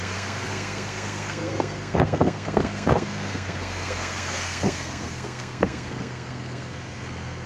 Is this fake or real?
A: fake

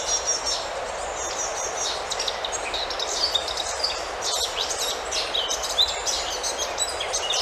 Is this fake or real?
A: real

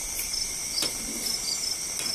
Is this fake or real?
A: real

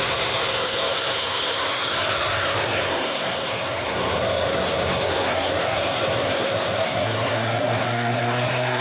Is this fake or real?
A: fake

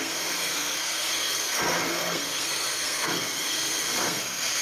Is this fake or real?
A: fake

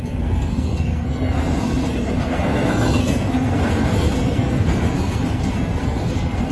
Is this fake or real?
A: fake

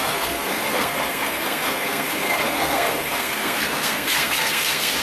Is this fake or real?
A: fake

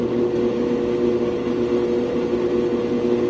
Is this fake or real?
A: real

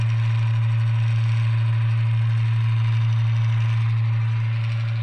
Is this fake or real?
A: real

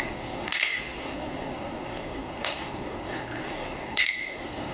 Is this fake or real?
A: fake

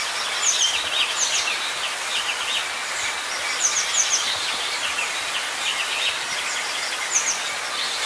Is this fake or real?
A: real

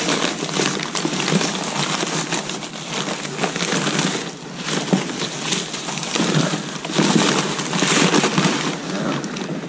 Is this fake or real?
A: real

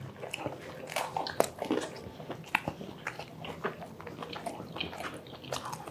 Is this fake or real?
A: real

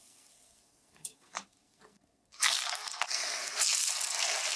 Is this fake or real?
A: fake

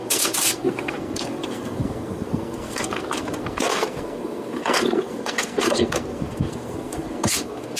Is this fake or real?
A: fake